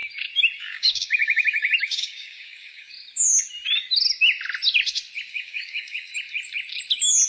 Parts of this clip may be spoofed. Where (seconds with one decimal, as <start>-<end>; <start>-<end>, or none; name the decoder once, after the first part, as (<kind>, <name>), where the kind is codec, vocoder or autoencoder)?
0.6-2.9 (codec, DAC); 5.3-6.1